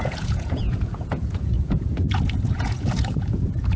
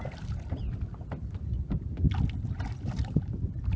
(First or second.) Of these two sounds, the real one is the second